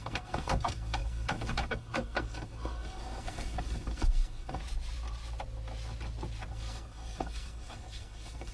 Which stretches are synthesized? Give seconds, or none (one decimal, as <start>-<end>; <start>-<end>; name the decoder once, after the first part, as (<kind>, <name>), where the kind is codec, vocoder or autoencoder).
0.0-4.6 (codec, SNAC); 6.5-8.5